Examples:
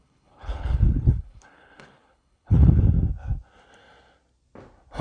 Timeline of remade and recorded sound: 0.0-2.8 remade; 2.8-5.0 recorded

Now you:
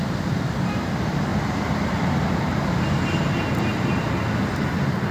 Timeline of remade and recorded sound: 0.0-1.3 recorded; 1.3-4.2 remade; 4.2-5.1 recorded